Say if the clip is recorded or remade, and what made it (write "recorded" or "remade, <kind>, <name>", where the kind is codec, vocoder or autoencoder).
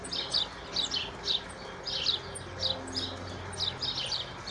recorded